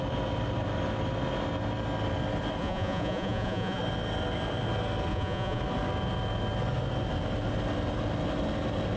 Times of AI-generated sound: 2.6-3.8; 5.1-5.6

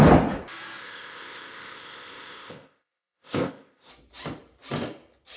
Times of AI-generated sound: 0.8-3.9

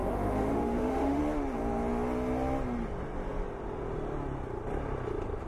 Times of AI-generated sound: 0.0-1.2